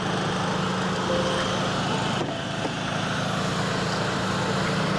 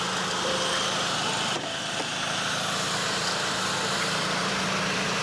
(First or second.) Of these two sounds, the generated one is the second